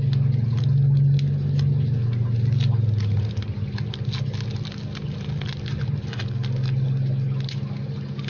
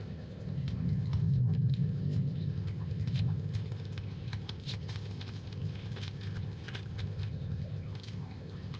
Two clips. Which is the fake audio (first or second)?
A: second